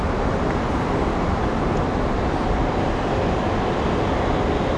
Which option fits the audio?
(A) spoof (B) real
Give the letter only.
B